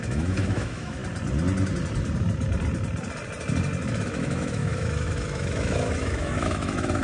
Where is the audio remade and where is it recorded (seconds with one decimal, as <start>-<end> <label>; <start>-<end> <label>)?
0.0-1.0 remade; 1.0-3.9 recorded; 3.9-7.0 remade